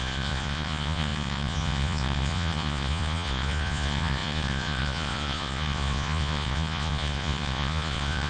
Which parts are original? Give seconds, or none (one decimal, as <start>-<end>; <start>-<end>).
none